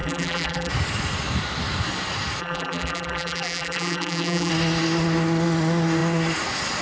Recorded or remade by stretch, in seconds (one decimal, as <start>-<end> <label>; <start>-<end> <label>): 0.0-0.7 remade; 0.7-2.4 recorded; 2.4-4.5 remade; 4.5-6.8 recorded